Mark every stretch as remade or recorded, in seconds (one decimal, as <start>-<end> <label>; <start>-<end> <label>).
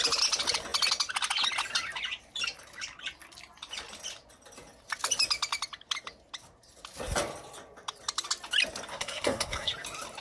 0.0-8.9 recorded; 8.9-9.7 remade; 9.7-10.2 recorded